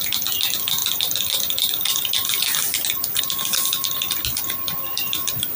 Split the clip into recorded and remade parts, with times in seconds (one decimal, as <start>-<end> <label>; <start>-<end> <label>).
0.0-4.9 recorded; 4.9-5.6 remade